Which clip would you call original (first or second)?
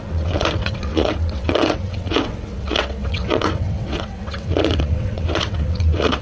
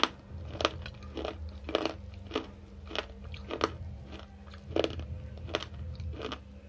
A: second